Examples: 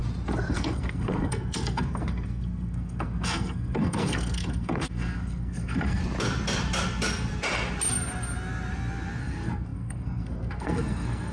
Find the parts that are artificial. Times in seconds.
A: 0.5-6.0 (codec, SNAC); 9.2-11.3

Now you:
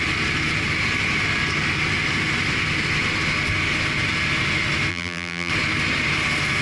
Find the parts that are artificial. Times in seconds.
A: 4.9-5.5 (vocoder, BigVGAN v2)